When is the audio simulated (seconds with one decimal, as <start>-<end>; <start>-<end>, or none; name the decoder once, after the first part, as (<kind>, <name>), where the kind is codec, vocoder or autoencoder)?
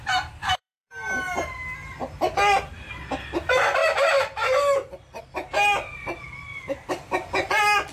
0.4-0.9 (codec, SNAC)